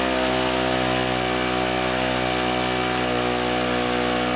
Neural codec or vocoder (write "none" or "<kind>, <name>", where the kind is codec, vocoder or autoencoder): none